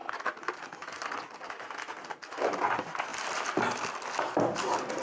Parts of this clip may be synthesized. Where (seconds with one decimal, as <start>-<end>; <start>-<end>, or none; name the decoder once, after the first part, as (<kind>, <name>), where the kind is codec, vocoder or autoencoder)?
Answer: none